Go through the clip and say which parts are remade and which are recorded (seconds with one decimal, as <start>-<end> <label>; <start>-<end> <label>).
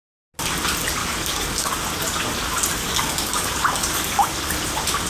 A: 0.0-1.0 recorded; 1.0-1.7 remade; 1.7-2.8 recorded; 2.8-4.5 remade; 4.5-5.1 recorded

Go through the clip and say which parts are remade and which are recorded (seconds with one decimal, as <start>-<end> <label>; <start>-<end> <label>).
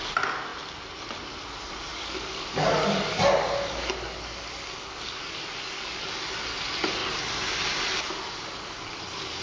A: 0.0-1.9 recorded; 1.9-6.2 remade; 6.2-9.4 recorded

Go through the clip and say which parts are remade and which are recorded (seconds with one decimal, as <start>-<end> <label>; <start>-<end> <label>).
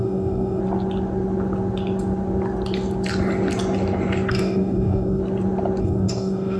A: 0.0-0.6 remade; 0.6-4.3 recorded; 4.3-5.2 remade; 5.2-5.8 recorded; 5.8-6.6 remade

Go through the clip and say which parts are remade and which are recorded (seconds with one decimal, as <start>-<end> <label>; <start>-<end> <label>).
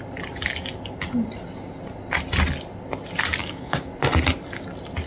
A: 0.0-3.4 recorded; 3.4-3.9 remade; 3.9-5.1 recorded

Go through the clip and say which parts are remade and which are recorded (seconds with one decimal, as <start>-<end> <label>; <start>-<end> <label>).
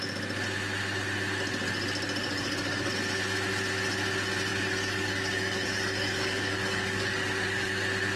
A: 0.0-2.2 recorded; 2.2-2.9 remade; 2.9-4.5 recorded; 4.5-7.7 remade; 7.7-8.2 recorded